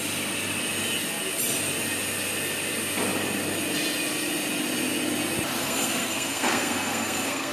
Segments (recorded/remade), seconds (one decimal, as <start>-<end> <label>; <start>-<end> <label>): 0.0-5.6 recorded; 5.6-7.5 remade